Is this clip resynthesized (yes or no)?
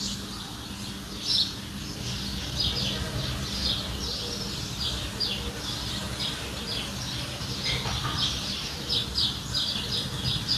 no